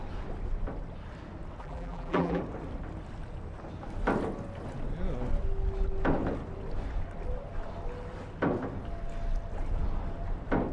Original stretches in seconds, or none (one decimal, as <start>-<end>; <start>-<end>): 0.0-1.6; 2.4-10.7